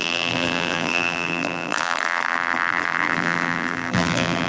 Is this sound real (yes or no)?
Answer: no